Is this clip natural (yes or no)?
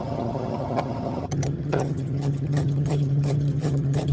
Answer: no